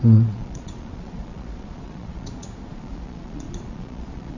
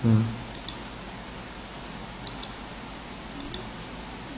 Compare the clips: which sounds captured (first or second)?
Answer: second